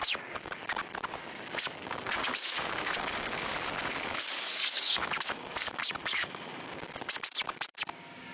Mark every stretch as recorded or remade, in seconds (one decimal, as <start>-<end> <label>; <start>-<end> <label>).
0.0-0.8 remade; 0.8-1.4 recorded; 1.4-8.3 remade